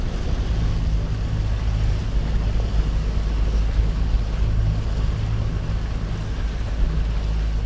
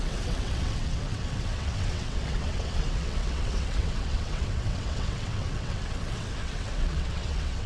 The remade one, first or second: second